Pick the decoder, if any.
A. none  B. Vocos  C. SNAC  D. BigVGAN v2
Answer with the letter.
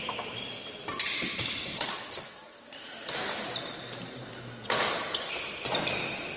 A